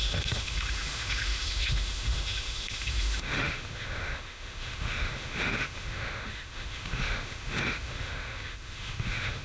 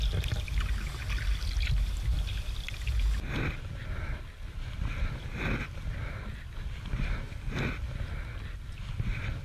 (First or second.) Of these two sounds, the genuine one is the second